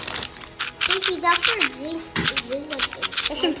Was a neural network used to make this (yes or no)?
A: no